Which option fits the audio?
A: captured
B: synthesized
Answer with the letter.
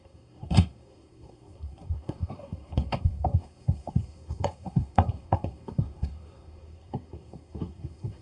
B